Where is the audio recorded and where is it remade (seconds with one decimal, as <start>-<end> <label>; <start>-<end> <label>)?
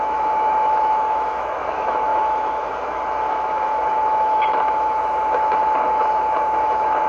0.0-7.1 remade